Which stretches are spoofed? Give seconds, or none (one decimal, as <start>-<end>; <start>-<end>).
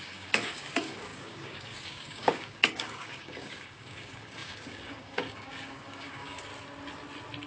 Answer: 0.0-6.5